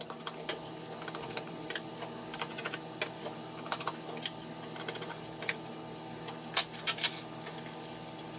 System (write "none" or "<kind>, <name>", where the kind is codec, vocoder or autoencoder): none